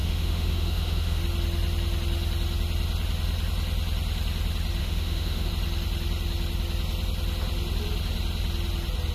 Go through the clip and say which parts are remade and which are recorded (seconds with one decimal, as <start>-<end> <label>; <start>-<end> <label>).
0.0-1.2 remade; 1.2-4.8 recorded; 4.8-5.5 remade; 5.5-9.1 recorded